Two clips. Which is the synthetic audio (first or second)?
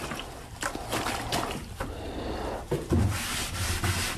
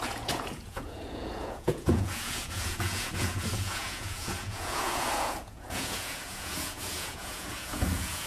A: second